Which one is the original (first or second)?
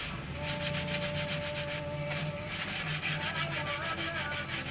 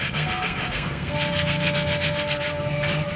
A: first